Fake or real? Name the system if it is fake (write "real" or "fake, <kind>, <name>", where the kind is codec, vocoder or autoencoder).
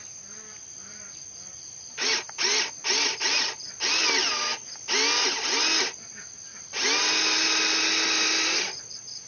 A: real